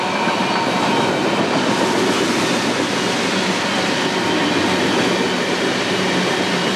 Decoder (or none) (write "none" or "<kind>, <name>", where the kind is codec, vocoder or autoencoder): none